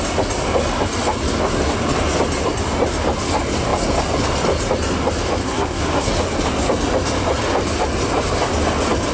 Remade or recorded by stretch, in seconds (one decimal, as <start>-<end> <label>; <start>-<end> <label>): 0.0-5.4 recorded; 5.4-6.1 remade; 6.1-9.1 recorded